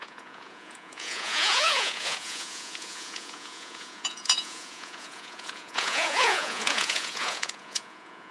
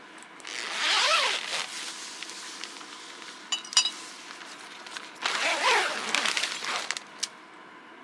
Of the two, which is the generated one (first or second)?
first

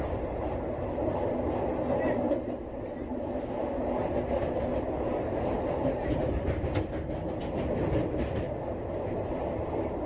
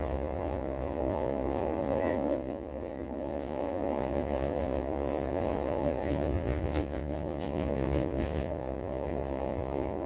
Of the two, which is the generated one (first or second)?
second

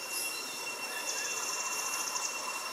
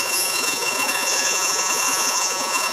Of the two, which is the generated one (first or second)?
second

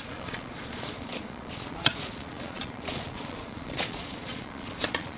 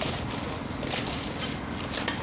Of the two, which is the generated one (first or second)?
first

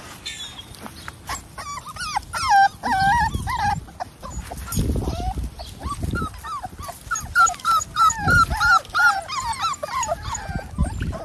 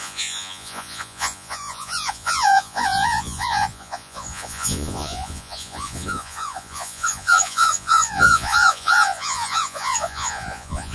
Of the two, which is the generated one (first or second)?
second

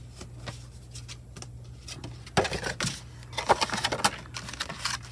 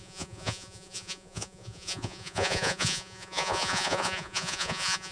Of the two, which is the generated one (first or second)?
second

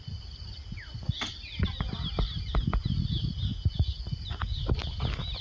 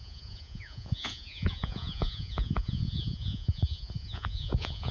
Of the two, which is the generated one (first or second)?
second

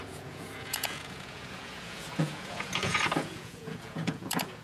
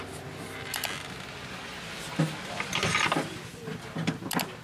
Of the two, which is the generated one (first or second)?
first